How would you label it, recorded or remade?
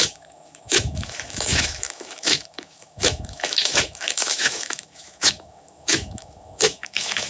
remade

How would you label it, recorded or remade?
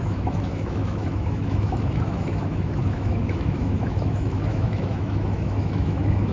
remade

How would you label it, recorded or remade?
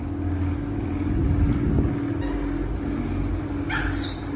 recorded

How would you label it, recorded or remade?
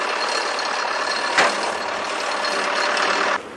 recorded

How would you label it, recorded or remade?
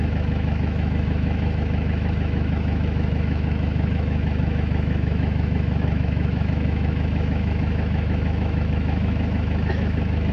remade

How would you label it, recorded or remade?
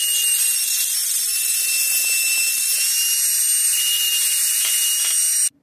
recorded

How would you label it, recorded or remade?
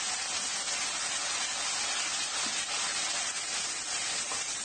recorded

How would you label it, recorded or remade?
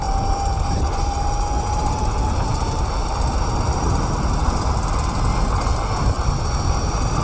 recorded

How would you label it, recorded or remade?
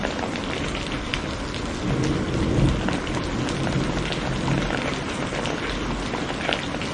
recorded